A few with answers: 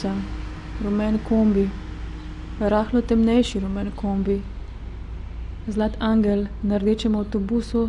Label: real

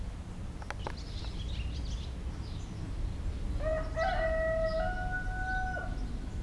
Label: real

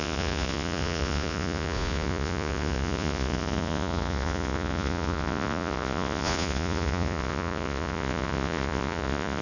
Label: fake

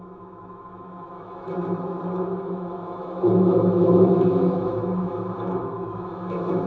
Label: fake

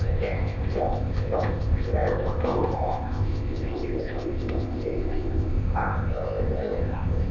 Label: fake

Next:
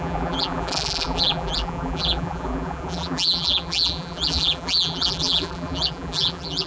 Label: fake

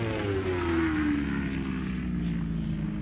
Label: real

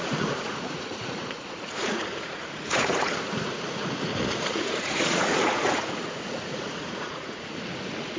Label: fake